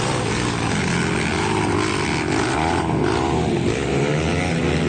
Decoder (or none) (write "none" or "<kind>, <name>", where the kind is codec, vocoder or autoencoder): none